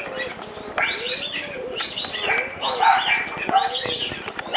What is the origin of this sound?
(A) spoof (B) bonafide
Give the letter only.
B